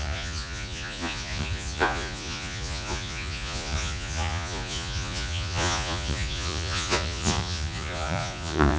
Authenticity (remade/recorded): remade